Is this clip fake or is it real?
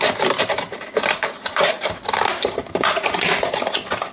fake